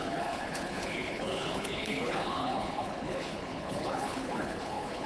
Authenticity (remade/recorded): remade